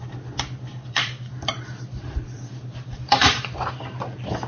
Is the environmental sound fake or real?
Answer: fake